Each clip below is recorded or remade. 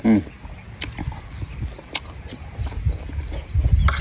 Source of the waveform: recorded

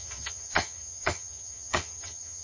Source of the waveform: remade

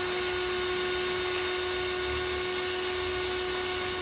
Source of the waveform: recorded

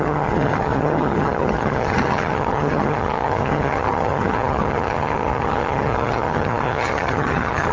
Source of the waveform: remade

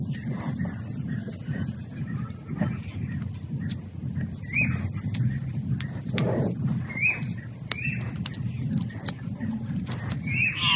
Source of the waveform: recorded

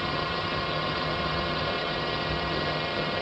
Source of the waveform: remade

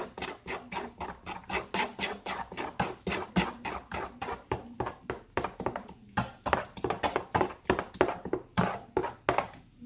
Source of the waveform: recorded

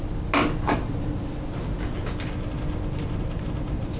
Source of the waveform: recorded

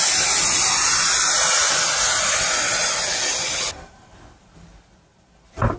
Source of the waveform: recorded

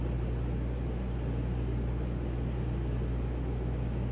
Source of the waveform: recorded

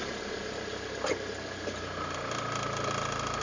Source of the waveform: recorded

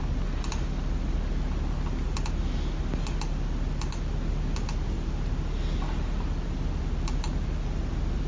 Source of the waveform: recorded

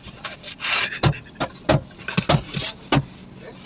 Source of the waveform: recorded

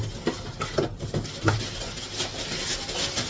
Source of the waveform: recorded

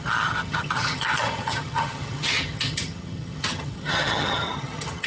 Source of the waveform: remade